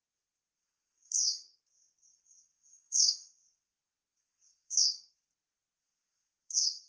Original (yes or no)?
no